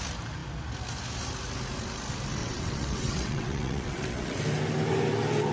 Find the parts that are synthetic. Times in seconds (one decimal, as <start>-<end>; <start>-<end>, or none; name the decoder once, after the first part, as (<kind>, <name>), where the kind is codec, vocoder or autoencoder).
2.4-4.4 (vocoder, WaveNeXt)